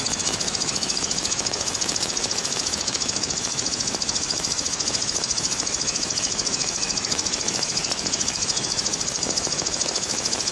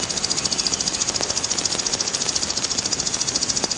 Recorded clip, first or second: second